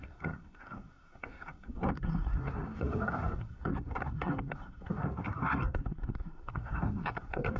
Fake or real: fake